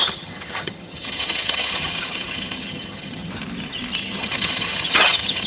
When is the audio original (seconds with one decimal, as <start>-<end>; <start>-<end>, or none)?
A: 3.3-4.0